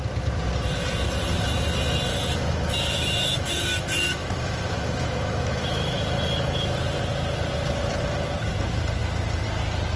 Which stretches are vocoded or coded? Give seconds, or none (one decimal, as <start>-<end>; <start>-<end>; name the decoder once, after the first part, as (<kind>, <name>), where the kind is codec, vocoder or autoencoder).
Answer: 2.1-6.8 (autoencoder, DAC-VAE)